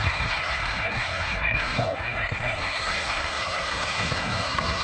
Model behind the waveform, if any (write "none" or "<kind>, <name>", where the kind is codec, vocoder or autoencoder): codec, SNAC